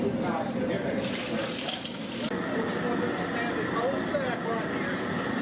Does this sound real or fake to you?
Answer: real